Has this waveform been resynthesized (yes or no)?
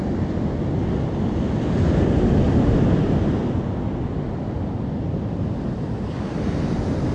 no